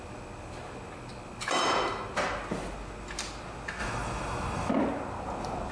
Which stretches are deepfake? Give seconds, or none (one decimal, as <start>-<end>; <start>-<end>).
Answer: 3.8-4.7